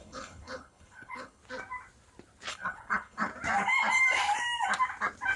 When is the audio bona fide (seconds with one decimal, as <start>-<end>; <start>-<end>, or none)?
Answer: 1.4-2.5; 3.3-5.4